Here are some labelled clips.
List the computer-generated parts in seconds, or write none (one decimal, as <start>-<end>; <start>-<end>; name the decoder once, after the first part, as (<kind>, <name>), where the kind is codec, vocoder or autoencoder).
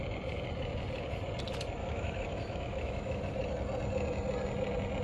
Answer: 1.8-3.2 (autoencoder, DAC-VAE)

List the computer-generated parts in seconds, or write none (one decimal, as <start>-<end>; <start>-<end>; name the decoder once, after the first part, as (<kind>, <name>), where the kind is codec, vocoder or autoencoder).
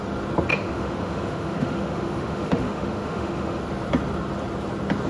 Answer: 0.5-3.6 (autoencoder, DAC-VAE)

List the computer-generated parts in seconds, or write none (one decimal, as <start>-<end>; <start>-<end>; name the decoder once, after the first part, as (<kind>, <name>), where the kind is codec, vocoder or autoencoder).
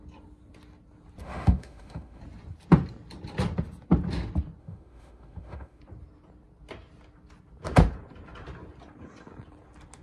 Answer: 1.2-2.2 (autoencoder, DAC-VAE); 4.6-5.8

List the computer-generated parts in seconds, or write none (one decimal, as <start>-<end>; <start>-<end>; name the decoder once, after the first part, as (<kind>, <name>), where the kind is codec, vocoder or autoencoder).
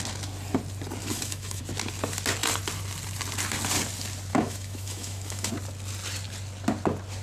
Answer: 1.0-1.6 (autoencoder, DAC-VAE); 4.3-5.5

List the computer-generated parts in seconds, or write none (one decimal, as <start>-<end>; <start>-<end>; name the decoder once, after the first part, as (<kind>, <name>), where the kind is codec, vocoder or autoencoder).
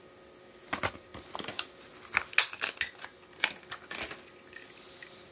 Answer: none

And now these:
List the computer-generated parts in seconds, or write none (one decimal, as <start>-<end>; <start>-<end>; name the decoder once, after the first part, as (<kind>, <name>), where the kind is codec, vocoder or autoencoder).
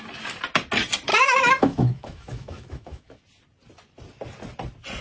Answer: 1.1-3.2 (autoencoder, DAC-VAE)